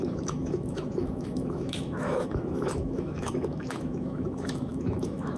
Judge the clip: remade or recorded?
remade